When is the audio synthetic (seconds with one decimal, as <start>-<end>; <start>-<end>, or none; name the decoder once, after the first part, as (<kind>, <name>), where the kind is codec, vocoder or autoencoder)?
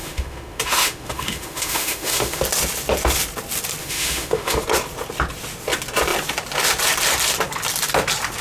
0.0-2.4 (autoencoder, DAC-VAE); 3.8-4.6